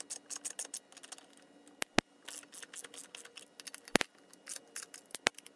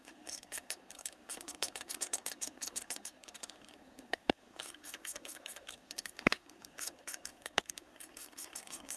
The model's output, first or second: second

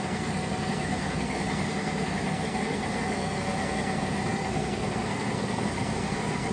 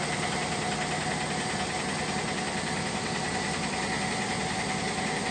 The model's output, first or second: first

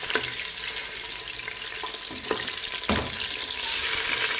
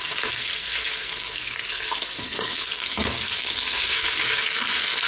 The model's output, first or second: second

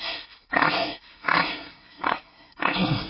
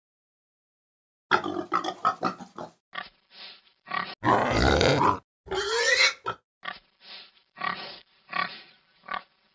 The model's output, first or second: first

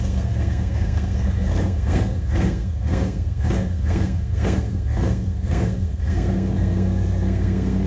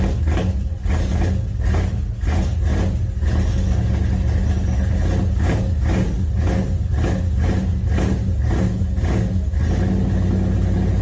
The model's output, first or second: first